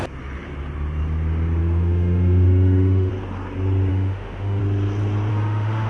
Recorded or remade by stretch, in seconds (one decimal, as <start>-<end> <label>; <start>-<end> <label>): 0.0-1.6 recorded; 1.6-3.1 remade; 3.1-3.9 recorded; 3.9-4.6 remade; 4.6-5.3 recorded; 5.3-5.9 remade

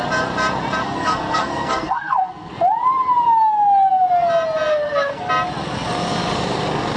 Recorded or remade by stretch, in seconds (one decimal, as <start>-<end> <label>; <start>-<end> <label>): 0.0-0.8 recorded; 0.8-2.5 remade; 2.5-4.7 recorded; 4.7-5.3 remade; 5.3-7.0 recorded